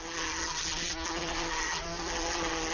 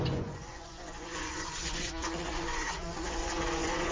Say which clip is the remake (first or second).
second